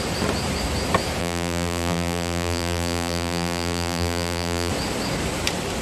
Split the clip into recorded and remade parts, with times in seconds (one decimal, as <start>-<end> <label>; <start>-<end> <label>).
0.0-1.2 recorded; 1.2-4.7 remade; 4.7-5.8 recorded